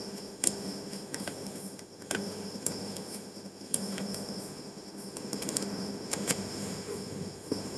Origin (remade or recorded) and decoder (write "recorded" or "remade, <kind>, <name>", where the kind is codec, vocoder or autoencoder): remade, autoencoder, DAC-VAE